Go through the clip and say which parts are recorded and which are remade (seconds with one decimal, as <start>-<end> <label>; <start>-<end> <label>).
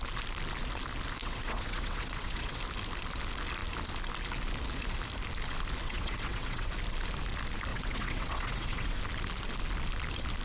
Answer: 0.0-1.2 recorded; 1.2-2.6 remade; 2.6-5.8 recorded; 5.8-6.7 remade; 6.7-7.7 recorded; 7.7-9.0 remade; 9.0-10.4 recorded